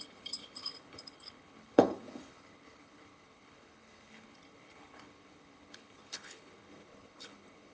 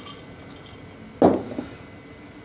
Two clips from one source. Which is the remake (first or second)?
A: first